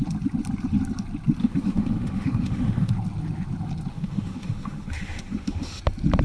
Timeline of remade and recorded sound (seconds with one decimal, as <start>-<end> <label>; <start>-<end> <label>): 0.0-1.4 recorded; 1.4-2.9 remade; 2.9-3.9 recorded; 3.9-5.8 remade; 5.8-6.2 recorded